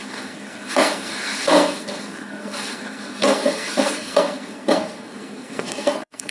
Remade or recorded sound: remade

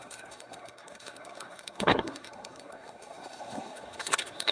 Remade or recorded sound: remade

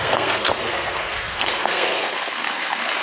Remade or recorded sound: remade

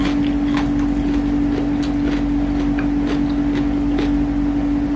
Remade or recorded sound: recorded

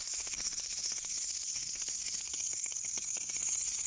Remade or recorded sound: remade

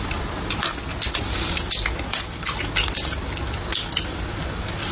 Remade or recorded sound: recorded